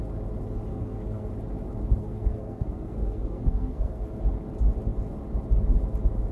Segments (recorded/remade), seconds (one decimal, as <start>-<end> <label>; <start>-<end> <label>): 0.0-0.7 recorded; 0.7-1.3 remade; 1.3-2.0 recorded; 2.0-4.2 remade; 4.2-6.3 recorded

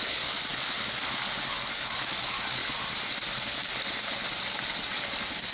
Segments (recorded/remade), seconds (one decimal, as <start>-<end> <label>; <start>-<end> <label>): 0.0-2.6 remade; 2.6-4.4 recorded; 4.4-5.5 remade

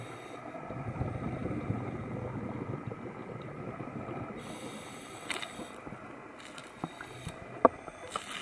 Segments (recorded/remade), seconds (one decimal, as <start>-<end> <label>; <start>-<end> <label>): 0.0-1.4 recorded; 1.4-1.9 remade; 1.9-3.2 recorded; 3.2-4.4 remade; 4.4-8.4 recorded

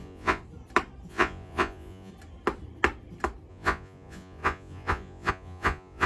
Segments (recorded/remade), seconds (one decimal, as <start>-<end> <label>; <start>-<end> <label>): 0.0-0.4 remade; 0.4-1.1 recorded; 1.1-2.1 remade; 2.1-3.5 recorded; 3.5-6.1 remade

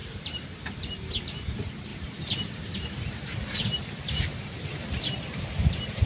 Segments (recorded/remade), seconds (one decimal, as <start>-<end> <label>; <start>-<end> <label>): 0.0-1.0 remade; 1.0-1.9 recorded; 1.9-5.6 remade; 5.6-6.1 recorded